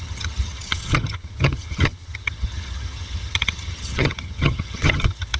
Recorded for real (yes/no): no